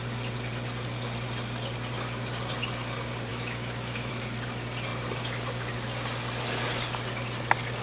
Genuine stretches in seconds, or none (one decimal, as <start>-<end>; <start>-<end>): 0.0-3.3; 4.1-7.8